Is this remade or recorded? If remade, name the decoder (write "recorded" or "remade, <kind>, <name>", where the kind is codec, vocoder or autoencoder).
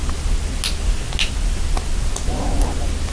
recorded